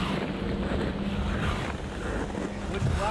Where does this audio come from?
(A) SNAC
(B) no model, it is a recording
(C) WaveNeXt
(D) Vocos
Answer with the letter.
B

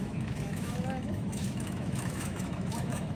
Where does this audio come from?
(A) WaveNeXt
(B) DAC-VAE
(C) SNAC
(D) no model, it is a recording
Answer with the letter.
B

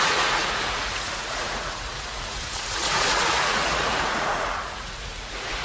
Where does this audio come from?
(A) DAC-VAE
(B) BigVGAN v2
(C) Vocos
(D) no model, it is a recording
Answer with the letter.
C